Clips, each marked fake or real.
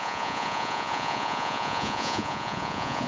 fake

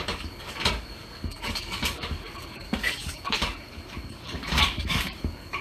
fake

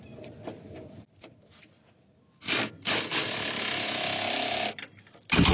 real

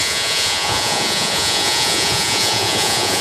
fake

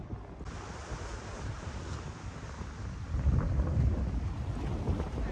real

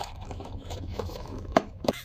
fake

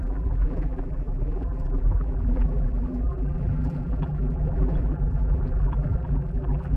fake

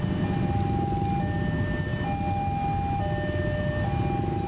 real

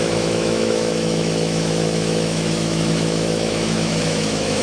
fake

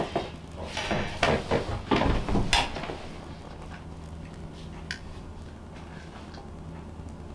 real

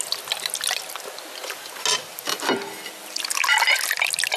real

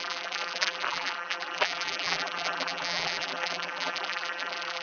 fake